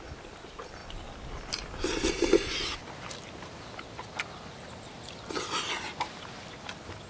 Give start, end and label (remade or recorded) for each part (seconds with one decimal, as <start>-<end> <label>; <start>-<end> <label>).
0.0-7.1 recorded